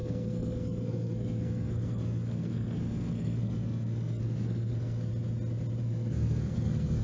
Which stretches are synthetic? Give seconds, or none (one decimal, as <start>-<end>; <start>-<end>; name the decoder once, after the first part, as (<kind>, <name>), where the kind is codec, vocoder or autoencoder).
0.0-5.1 (codec, SNAC); 5.8-7.0